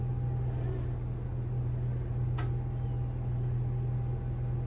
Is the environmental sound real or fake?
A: real